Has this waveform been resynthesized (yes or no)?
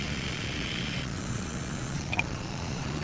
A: yes